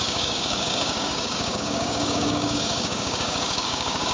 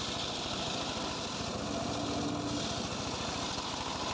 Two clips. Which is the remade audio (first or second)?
first